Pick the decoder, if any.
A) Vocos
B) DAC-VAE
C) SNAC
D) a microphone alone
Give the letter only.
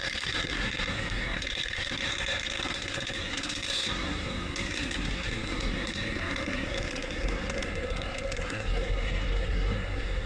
C